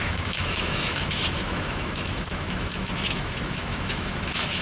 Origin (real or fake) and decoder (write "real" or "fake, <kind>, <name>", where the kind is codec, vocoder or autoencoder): fake, autoencoder, DAC-VAE